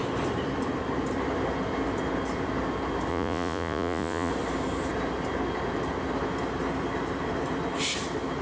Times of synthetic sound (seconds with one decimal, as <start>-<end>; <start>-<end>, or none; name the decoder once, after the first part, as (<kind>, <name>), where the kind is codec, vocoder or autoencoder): 3.1-4.3 (vocoder, Vocos)